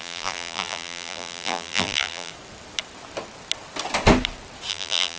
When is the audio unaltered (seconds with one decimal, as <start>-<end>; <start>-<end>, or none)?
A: 2.3-4.7